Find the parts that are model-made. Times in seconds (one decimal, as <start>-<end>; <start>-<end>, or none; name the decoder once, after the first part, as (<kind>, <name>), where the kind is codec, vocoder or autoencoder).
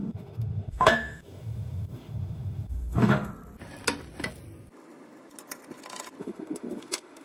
0.0-3.3 (autoencoder, DAC-VAE); 6.2-7.2